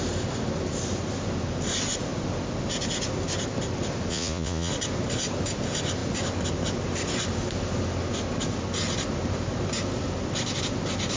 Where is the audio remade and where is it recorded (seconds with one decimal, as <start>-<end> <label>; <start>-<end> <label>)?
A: 0.0-4.1 recorded; 4.1-4.7 remade; 4.7-11.2 recorded